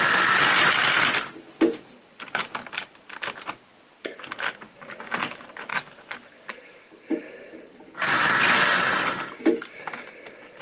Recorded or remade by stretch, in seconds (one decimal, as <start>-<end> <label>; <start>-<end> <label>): 0.0-5.7 recorded; 5.7-7.0 remade; 7.0-10.6 recorded